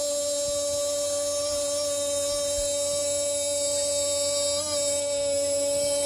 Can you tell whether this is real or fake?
real